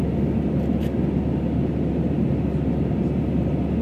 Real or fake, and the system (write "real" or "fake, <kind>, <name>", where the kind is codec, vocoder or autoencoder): real